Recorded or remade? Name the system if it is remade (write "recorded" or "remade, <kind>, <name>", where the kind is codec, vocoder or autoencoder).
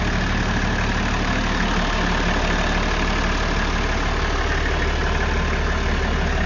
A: recorded